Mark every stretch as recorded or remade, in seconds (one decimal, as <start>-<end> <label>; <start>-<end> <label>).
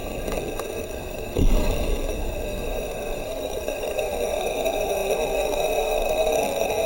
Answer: 0.0-6.9 remade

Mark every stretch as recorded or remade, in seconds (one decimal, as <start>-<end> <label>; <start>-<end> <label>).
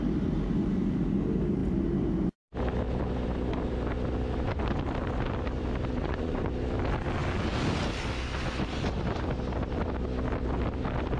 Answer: 0.0-6.0 recorded; 6.0-6.5 remade; 6.5-11.2 recorded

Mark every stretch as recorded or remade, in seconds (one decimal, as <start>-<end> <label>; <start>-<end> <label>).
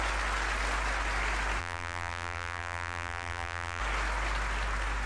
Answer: 0.0-1.6 recorded; 1.6-3.8 remade; 3.8-5.1 recorded